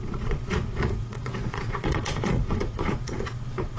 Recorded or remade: remade